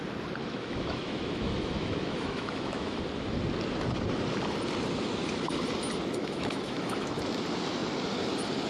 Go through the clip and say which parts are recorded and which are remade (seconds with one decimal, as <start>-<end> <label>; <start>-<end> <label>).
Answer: 0.0-0.4 recorded; 0.4-3.0 remade; 3.0-6.2 recorded; 6.2-7.2 remade; 7.2-8.7 recorded